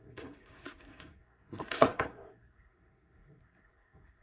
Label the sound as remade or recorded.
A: remade